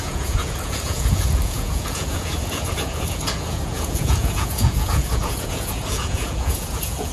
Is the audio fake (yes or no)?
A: yes